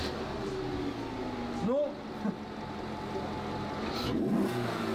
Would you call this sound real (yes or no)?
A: yes